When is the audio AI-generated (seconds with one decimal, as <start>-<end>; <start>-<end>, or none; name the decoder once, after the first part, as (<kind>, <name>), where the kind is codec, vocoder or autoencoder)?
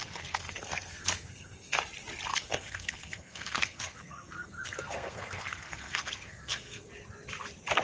0.0-1.8 (codec, SNAC); 2.3-6.9